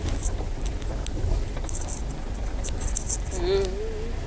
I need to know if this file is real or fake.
real